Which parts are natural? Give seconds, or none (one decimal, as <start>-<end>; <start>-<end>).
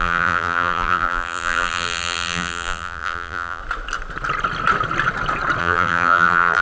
3.6-5.6